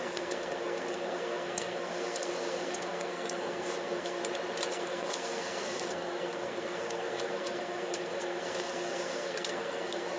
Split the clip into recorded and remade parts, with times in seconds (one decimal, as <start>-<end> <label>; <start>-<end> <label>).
0.0-4.2 remade; 4.2-4.7 recorded; 4.7-10.2 remade